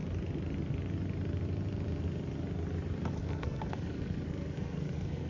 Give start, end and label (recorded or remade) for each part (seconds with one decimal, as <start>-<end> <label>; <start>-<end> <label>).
0.0-3.2 recorded; 3.2-5.3 remade